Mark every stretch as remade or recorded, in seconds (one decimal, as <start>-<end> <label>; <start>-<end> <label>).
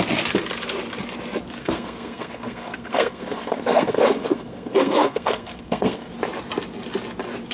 0.0-1.6 recorded; 1.6-6.1 remade; 6.1-7.5 recorded